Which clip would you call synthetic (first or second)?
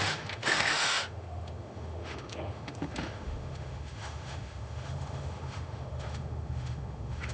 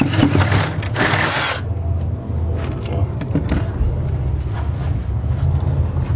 first